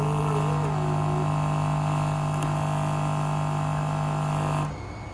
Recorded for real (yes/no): yes